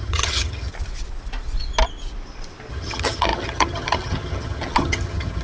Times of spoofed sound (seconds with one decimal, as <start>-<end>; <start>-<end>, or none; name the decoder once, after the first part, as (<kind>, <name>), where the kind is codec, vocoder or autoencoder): 0.0-0.7 (vocoder, HiFi-GAN); 2.7-5.4